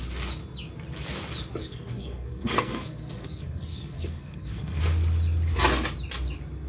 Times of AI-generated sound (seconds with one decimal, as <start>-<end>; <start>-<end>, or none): 1.6-4.8